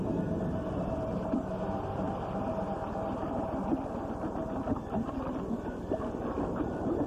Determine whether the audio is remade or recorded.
recorded